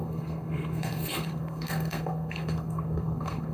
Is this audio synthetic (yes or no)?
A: yes